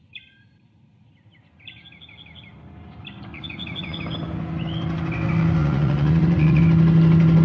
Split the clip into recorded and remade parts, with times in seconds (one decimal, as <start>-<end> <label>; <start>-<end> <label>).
0.0-3.3 recorded; 3.3-4.0 remade; 4.0-5.6 recorded; 5.6-6.6 remade; 6.6-7.4 recorded